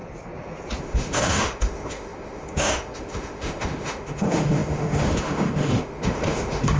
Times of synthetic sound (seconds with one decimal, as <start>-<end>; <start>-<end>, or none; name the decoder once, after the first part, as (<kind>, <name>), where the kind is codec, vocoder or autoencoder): 0.8-6.8 (autoencoder, DAC-VAE)